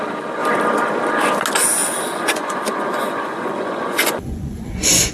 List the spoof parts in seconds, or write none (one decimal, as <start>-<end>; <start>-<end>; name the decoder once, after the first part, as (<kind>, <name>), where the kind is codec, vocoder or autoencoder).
1.8-5.1 (vocoder, Vocos)